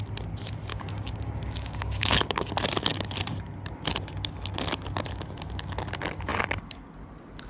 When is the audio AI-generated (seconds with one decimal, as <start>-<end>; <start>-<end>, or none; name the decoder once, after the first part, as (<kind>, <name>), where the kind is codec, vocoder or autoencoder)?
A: 0.7-2.5 (codec, DAC)